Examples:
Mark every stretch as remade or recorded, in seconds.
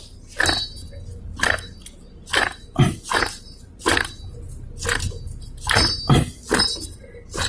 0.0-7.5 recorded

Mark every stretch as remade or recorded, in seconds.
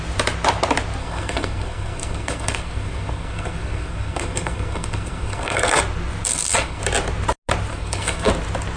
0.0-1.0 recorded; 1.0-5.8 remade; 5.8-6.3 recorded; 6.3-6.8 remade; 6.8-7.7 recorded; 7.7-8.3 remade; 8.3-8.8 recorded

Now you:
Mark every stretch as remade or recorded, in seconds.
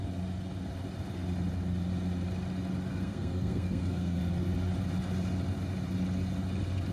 0.0-2.9 recorded; 2.9-4.2 remade; 4.2-6.9 recorded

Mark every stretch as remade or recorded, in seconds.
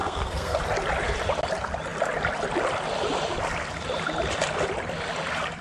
0.0-0.6 remade; 0.6-5.6 recorded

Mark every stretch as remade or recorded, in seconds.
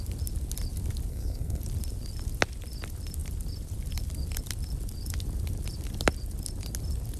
0.0-1.1 recorded; 1.1-1.6 remade; 1.6-7.2 recorded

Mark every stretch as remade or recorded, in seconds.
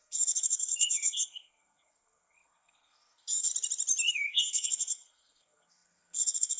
0.0-3.5 remade; 3.5-4.1 recorded; 4.1-6.6 remade